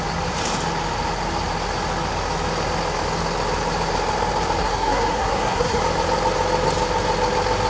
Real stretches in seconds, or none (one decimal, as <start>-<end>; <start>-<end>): 0.0-4.6; 5.8-7.7